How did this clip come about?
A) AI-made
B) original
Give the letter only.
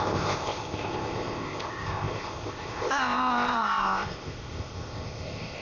A